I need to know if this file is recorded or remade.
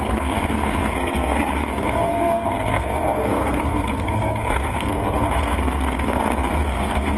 remade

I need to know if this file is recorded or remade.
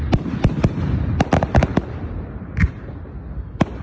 recorded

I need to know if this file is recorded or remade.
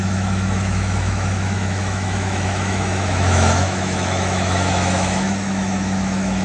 remade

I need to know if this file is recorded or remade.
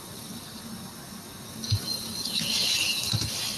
recorded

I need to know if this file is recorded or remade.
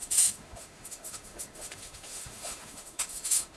remade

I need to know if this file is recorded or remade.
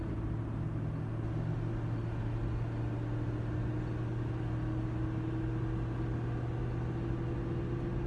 recorded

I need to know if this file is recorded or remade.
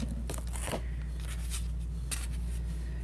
recorded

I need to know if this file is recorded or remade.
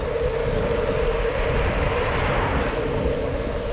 recorded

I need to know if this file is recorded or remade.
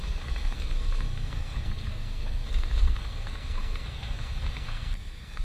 remade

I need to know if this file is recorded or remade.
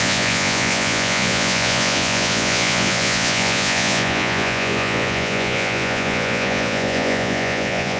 remade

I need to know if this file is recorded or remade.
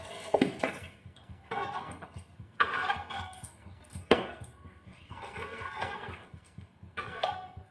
remade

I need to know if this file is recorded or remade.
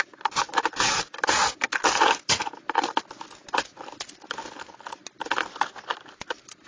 recorded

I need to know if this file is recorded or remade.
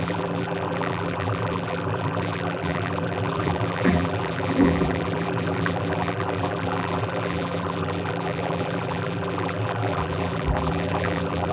remade